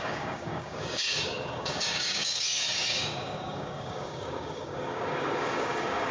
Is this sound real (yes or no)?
no